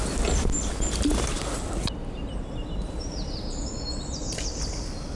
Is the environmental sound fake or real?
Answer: real